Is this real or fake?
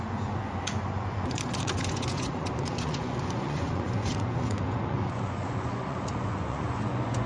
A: fake